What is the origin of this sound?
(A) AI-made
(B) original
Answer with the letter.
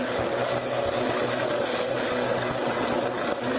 B